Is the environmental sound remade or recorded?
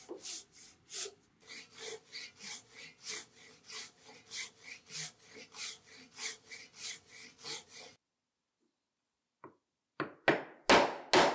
recorded